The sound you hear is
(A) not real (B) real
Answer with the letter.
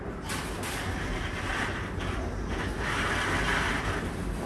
B